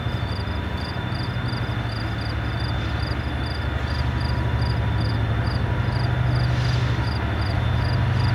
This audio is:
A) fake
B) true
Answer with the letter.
B